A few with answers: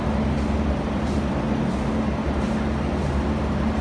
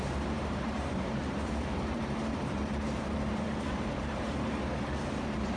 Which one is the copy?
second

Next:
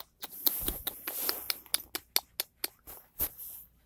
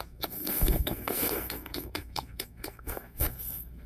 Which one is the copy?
second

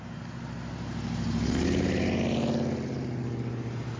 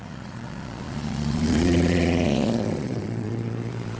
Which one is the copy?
second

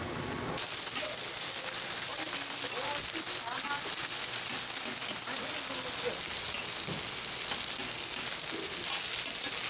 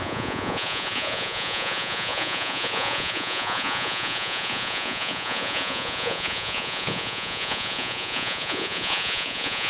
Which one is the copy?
second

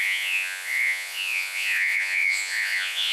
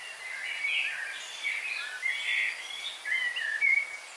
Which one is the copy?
first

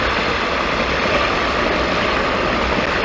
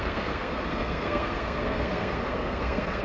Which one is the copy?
second